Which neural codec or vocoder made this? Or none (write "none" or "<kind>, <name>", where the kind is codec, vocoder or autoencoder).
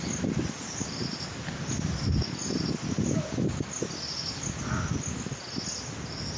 none